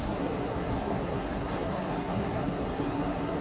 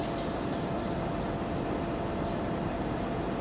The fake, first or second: first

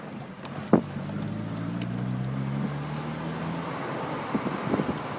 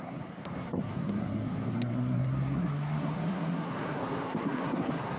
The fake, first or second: second